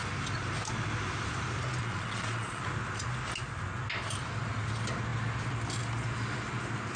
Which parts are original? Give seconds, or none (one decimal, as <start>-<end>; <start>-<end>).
0.0-1.8; 2.6-7.0